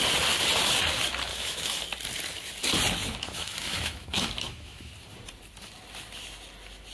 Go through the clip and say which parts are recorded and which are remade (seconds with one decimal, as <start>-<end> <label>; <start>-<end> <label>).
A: 0.0-1.3 recorded; 1.3-1.8 remade; 1.8-3.0 recorded; 3.0-4.9 remade; 4.9-6.9 recorded